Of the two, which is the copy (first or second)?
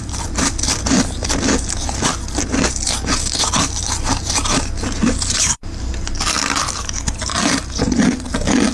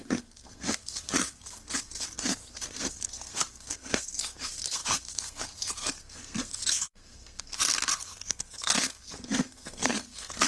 second